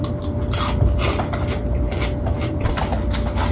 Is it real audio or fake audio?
real